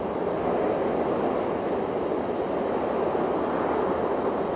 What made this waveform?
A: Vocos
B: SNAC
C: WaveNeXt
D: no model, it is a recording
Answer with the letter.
D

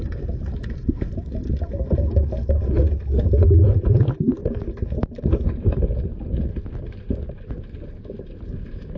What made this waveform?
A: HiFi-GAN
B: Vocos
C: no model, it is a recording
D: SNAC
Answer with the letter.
C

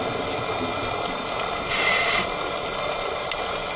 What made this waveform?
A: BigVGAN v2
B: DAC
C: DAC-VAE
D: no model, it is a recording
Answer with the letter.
D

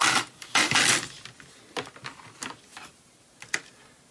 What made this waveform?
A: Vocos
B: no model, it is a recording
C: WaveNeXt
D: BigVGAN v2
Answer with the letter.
B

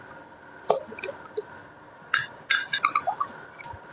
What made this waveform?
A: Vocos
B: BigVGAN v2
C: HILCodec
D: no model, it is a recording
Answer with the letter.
D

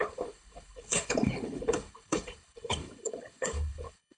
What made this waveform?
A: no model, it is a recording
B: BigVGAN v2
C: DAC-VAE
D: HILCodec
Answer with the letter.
D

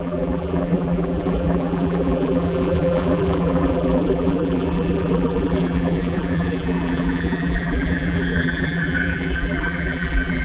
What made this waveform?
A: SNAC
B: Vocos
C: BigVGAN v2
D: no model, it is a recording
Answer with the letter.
C